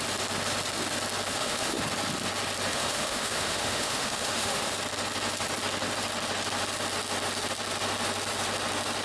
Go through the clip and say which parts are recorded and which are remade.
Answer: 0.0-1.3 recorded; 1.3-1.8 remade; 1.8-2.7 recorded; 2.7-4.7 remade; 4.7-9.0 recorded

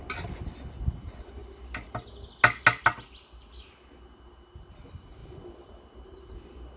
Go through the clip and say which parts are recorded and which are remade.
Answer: 0.0-5.2 recorded; 5.2-5.8 remade; 5.8-6.8 recorded

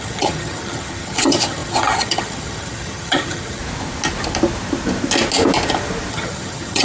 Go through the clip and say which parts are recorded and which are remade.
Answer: 0.0-3.6 remade; 3.6-6.1 recorded; 6.1-6.8 remade

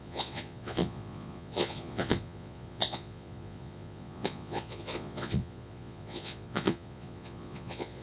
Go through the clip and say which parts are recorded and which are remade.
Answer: 0.0-8.0 remade

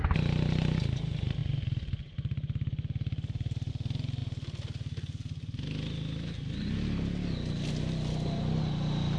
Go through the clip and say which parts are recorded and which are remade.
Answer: 0.0-9.2 recorded

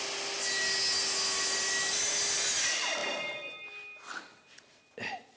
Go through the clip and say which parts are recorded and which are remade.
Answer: 0.0-5.4 recorded

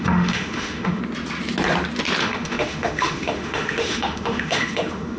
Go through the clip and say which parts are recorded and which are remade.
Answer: 0.0-1.0 remade; 1.0-2.2 recorded; 2.2-5.2 remade